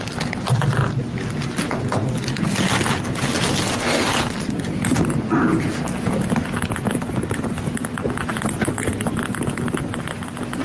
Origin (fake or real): real